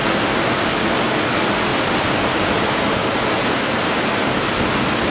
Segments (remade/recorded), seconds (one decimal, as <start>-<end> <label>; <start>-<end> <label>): 0.0-5.1 recorded